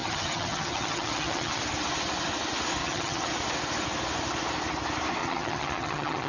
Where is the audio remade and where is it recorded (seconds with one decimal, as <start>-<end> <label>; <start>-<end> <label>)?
0.0-1.6 remade; 1.6-2.8 recorded; 2.8-3.3 remade; 3.3-5.2 recorded; 5.2-6.3 remade